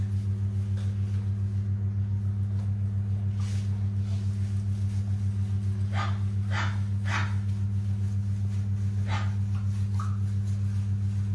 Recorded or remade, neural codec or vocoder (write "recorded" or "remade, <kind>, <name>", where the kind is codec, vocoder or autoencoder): recorded